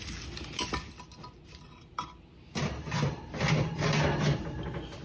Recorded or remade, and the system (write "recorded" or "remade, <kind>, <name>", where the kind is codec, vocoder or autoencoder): recorded